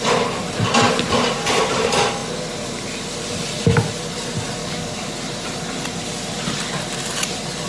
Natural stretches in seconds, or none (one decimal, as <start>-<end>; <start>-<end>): 0.0-4.6; 5.1-7.7